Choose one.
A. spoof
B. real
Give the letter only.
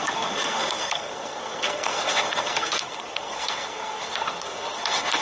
A